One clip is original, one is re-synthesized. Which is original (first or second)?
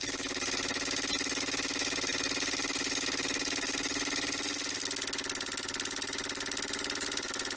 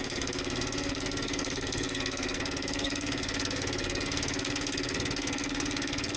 first